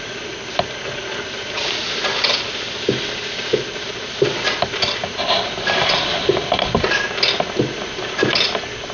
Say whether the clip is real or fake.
real